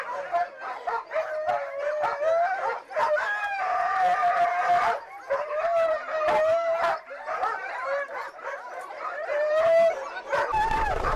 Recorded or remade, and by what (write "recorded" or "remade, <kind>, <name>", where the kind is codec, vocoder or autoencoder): remade, vocoder, BigVGAN v2